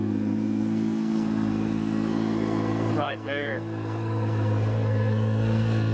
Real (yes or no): no